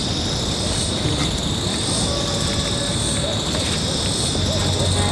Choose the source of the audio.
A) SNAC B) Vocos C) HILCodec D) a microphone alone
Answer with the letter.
D